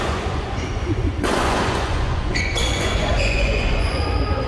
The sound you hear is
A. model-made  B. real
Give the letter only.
A